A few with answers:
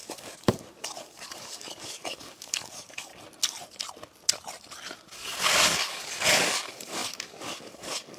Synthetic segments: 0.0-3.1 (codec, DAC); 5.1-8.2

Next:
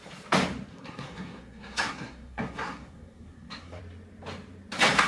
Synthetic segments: 0.7-3.8 (codec, SNAC)

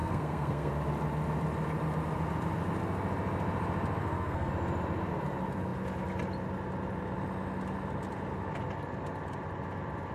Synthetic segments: 0.0-0.7 (codec, SNAC); 4.0-4.5